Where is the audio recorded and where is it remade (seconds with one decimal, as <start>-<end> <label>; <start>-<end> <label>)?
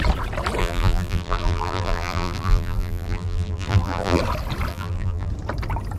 0.0-0.6 recorded; 0.6-4.2 remade; 4.2-4.7 recorded; 4.7-5.3 remade; 5.3-6.0 recorded